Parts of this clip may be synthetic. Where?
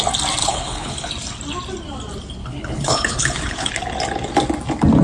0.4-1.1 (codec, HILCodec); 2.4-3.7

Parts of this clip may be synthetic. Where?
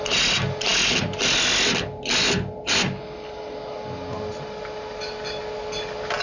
none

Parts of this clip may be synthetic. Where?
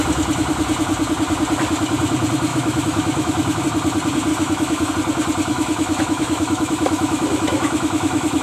2.5-3.6 (autoencoder, DAC-VAE); 4.3-4.9; 5.5-8.4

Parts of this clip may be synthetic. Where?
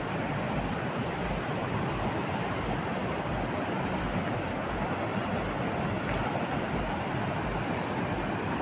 none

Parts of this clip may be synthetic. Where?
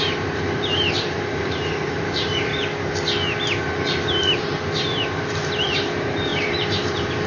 0.0-2.5 (vocoder, BigVGAN v2); 4.2-7.3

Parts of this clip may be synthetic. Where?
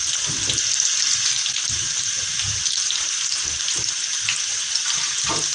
2.1-3.0 (vocoder, BigVGAN v2)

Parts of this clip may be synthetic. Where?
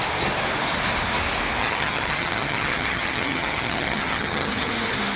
1.6-4.7 (vocoder, HiFi-GAN)